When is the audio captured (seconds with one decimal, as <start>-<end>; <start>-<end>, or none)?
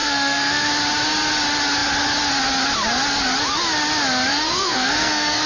0.7-4.3